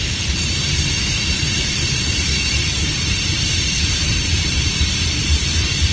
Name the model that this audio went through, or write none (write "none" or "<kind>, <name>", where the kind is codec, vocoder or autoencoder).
vocoder, BigVGAN v2